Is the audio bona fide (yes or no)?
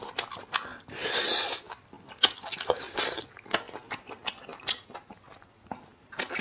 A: yes